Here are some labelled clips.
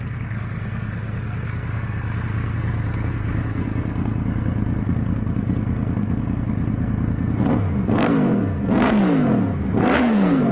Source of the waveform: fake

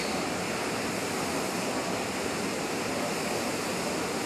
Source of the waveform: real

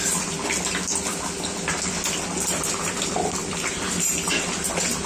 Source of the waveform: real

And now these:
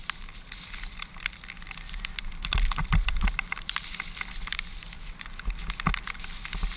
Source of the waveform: real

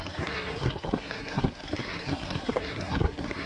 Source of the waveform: fake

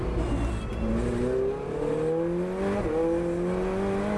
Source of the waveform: real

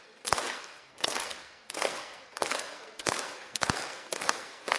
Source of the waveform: fake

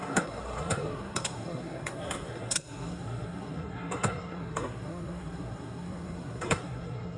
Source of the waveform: fake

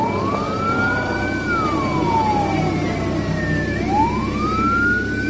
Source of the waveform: real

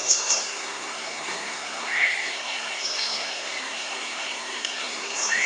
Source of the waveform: fake